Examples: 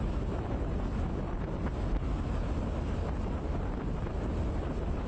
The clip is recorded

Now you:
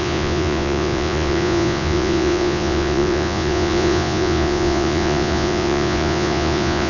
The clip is remade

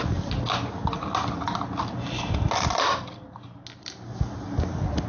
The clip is recorded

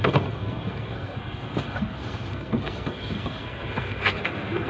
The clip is remade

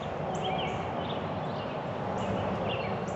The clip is recorded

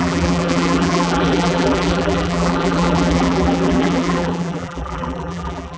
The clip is remade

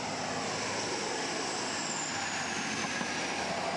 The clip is recorded